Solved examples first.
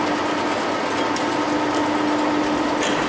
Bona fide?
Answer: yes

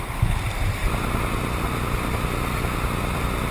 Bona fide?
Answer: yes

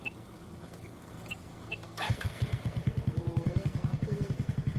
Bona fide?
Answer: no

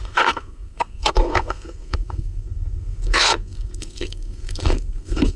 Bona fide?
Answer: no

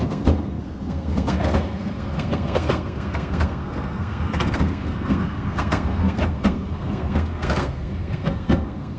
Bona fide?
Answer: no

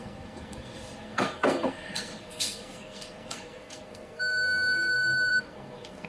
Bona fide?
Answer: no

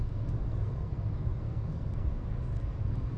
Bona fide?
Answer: no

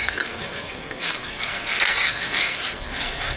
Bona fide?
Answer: no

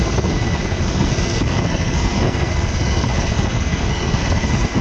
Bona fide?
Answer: no